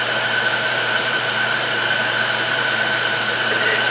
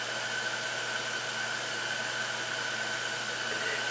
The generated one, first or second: first